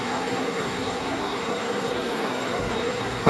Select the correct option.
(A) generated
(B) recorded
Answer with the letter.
A